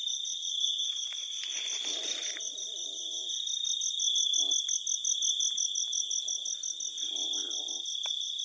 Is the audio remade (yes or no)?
no